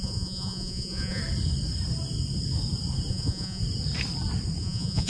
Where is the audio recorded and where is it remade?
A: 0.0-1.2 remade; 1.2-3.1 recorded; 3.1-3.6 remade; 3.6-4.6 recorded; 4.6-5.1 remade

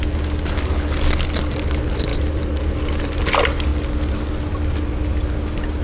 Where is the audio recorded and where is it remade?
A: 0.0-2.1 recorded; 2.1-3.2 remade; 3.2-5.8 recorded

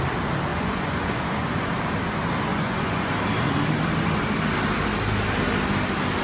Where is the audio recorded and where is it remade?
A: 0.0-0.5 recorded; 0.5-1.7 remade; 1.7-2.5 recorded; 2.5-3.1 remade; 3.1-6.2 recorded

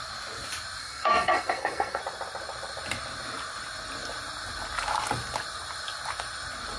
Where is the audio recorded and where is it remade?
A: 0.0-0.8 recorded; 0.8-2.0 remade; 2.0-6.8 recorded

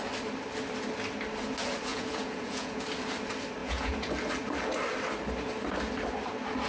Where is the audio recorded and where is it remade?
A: 0.0-1.9 recorded; 1.9-2.8 remade; 2.8-3.6 recorded; 3.6-4.1 remade; 4.1-6.7 recorded

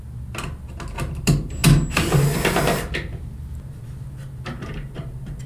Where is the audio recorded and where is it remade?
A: 0.0-5.5 recorded

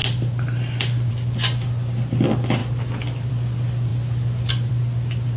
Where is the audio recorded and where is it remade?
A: 0.0-5.4 recorded

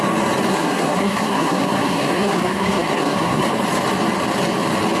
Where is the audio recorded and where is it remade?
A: 0.0-0.5 recorded; 0.5-3.5 remade; 3.5-5.0 recorded